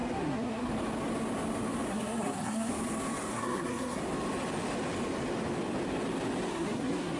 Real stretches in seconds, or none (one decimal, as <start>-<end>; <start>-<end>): 0.7-1.9; 2.7-3.3; 4.0-6.5